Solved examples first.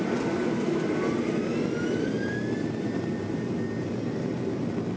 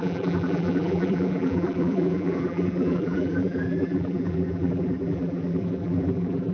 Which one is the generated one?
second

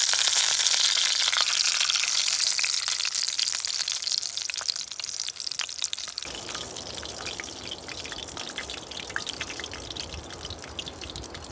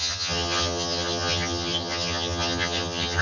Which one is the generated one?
second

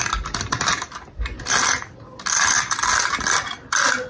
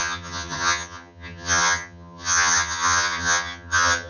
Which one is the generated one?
second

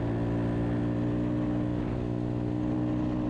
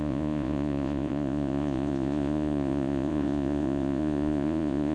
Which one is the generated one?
second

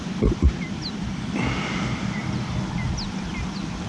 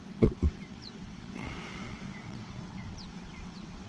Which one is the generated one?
second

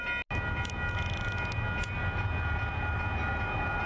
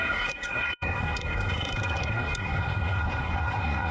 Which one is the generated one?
second